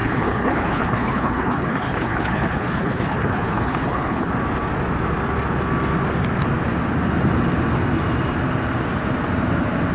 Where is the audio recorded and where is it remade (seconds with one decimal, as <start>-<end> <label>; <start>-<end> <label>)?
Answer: 0.0-4.3 remade; 4.3-9.9 recorded